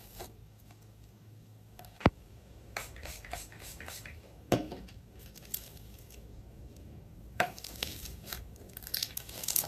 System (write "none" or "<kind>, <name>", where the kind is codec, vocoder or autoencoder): codec, DAC